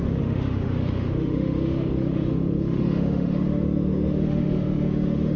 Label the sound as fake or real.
fake